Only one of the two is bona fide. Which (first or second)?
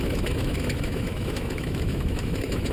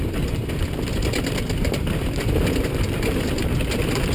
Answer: second